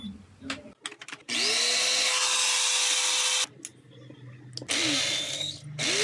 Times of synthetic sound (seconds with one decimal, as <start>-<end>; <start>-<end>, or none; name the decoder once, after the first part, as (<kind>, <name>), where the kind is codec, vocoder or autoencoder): none